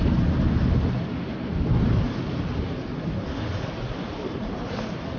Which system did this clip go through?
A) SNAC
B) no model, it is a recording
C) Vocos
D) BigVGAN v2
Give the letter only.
B